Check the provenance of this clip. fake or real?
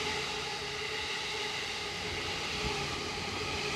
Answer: real